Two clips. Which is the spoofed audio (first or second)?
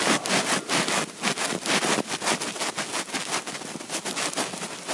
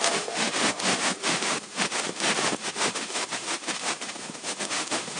second